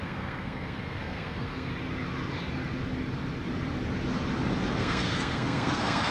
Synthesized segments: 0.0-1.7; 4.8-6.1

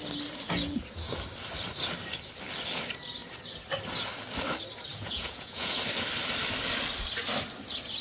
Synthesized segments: 4.9-5.8

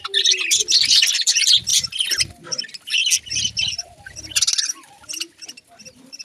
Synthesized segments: none